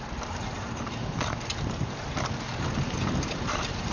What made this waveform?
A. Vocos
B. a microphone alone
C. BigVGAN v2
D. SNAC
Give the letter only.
C